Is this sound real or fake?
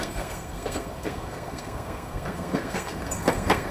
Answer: fake